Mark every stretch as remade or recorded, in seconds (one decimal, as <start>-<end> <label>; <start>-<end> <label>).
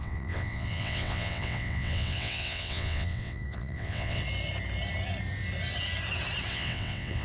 0.0-4.2 remade; 4.2-6.5 recorded; 6.5-7.2 remade